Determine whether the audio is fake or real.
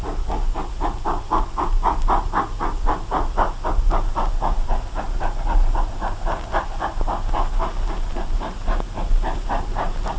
real